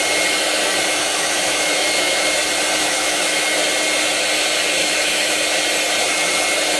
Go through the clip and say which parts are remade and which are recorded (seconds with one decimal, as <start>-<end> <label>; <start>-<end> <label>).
0.0-1.1 recorded; 1.1-2.4 remade; 2.4-2.8 recorded; 2.8-3.6 remade; 3.6-4.8 recorded; 4.8-5.4 remade; 5.4-6.8 recorded